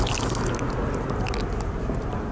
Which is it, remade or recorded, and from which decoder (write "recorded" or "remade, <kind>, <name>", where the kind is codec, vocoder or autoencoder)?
recorded